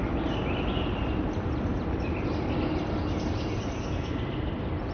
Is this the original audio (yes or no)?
yes